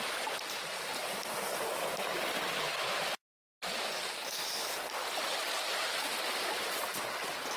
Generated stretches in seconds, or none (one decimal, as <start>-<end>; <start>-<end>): none